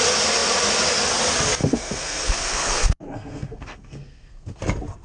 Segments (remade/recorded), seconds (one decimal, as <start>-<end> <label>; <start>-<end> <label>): 0.0-1.6 recorded; 1.6-4.6 remade; 4.6-5.0 recorded